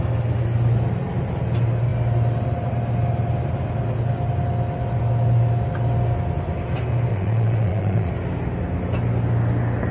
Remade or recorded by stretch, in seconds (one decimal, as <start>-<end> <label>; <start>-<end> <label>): 0.0-7.1 recorded; 7.1-8.1 remade; 8.1-9.9 recorded